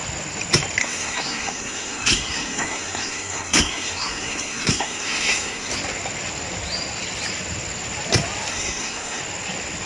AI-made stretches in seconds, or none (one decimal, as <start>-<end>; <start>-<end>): 0.8-5.7; 8.5-9.2